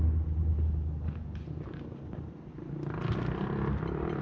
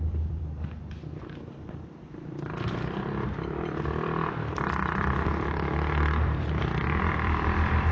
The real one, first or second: first